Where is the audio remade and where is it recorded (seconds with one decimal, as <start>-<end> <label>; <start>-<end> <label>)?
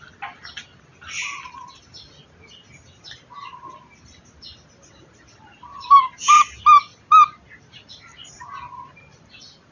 0.0-9.7 recorded